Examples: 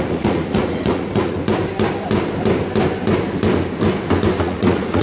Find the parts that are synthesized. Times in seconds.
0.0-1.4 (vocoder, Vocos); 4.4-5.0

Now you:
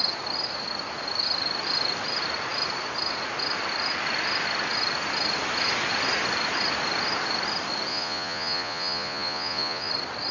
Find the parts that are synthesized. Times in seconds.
7.9-9.9 (vocoder, Vocos)

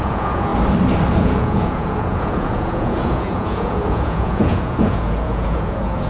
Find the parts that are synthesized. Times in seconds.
0.0-0.5 (vocoder, Vocos); 1.2-6.1

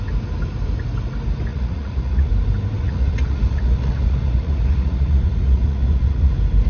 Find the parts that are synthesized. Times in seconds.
1.5-2.3 (vocoder, Vocos); 2.8-6.3

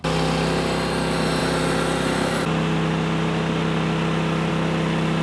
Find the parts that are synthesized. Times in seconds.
none

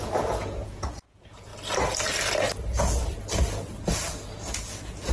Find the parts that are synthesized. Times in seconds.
0.0-1.5 (vocoder, Vocos); 4.3-5.1

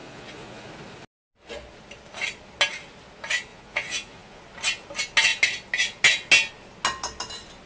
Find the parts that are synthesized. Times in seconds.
0.0-0.7 (vocoder, Vocos); 3.5-4.4

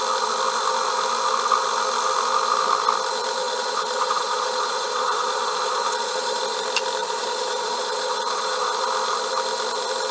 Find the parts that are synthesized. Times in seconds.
3.4-6.4 (vocoder, Vocos); 7.0-8.7